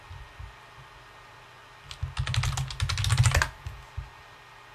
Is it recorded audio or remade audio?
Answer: recorded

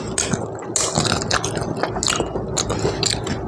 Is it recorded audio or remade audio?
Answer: recorded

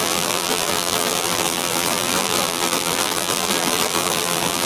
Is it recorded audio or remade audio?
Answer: remade